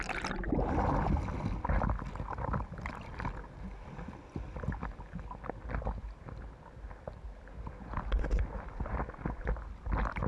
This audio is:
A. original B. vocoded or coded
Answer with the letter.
A